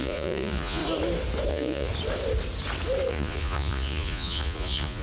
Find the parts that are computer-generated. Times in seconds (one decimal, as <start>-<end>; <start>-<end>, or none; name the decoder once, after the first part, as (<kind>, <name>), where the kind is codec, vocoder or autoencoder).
0.0-0.8 (vocoder, Vocos); 1.5-1.9; 3.1-5.0